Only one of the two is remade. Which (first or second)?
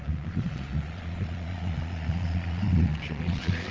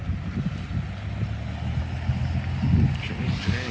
first